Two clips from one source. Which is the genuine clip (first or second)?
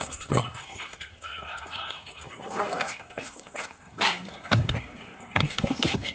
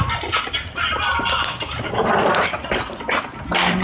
second